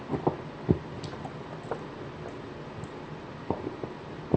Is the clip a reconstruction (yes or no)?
no